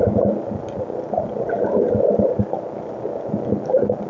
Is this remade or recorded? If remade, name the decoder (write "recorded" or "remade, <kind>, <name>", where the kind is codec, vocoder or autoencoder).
recorded